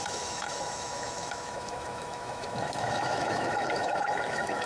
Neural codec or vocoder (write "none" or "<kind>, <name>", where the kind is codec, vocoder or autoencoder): autoencoder, DAC-VAE